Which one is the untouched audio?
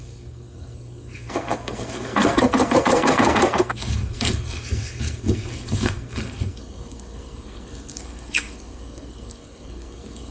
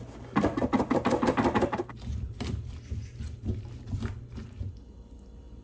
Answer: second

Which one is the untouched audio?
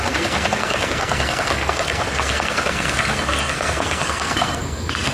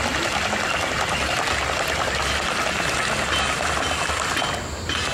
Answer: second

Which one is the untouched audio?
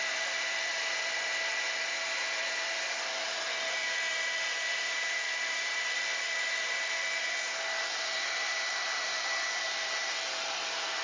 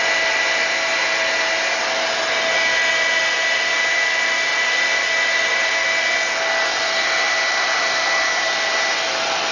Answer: second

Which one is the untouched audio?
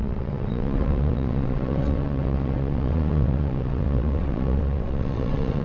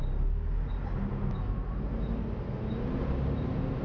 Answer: second